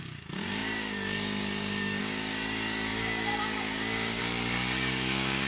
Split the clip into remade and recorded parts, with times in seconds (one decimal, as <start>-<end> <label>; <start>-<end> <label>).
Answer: 0.0-5.5 remade

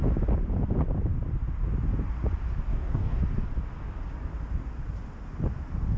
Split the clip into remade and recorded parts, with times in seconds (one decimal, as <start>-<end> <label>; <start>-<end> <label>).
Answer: 0.0-2.7 recorded; 2.7-3.2 remade; 3.2-6.0 recorded

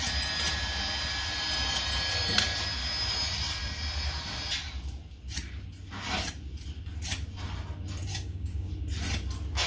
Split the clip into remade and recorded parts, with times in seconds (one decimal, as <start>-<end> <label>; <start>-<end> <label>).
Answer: 0.0-8.1 recorded; 8.1-8.7 remade; 8.7-9.7 recorded